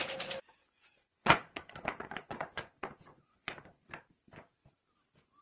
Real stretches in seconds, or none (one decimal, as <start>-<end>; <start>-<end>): 0.0-0.6; 3.8-5.4